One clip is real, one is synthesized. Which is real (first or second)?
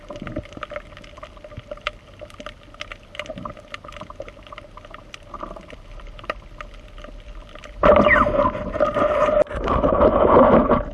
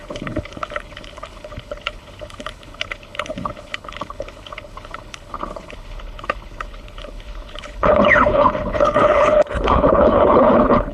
first